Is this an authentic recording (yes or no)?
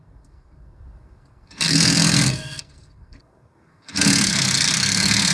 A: no